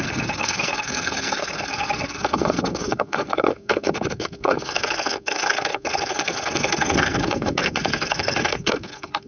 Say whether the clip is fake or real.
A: fake